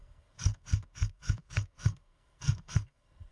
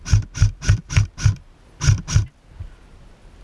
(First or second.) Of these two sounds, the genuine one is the second